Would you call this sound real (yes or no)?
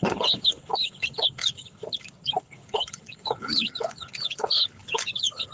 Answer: no